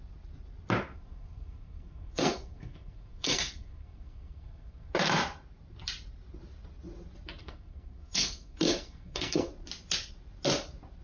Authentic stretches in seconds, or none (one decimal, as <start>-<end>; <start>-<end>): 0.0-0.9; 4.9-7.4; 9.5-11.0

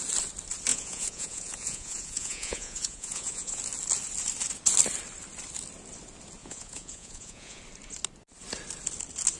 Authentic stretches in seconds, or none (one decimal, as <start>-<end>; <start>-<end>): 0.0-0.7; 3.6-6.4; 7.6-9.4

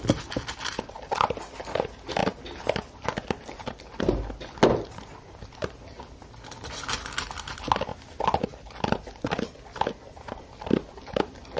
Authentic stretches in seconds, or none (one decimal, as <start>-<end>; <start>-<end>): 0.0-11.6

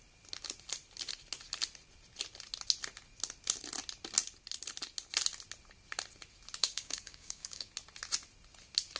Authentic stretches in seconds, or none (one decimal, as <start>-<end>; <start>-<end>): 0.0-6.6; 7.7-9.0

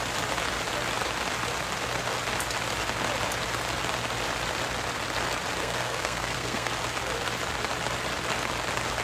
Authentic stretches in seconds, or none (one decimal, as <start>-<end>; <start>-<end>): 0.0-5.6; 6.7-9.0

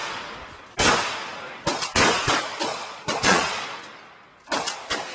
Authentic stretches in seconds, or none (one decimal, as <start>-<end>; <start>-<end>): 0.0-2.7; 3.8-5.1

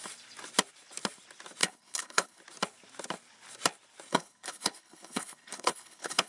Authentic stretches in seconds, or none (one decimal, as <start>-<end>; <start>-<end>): 0.0-1.6; 2.4-4.1

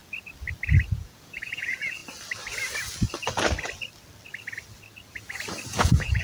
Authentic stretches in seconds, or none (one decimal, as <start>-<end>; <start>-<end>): 0.0-0.9; 2.0-5.7